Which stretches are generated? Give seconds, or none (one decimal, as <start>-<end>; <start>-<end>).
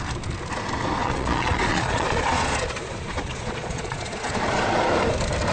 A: 1.0-4.3